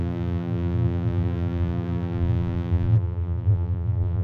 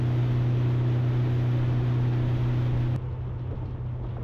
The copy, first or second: first